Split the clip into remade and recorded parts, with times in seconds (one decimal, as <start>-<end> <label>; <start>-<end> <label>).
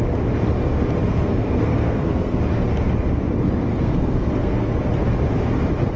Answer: 0.0-1.1 recorded; 1.1-2.4 remade; 2.4-3.7 recorded; 3.7-4.8 remade; 4.8-6.0 recorded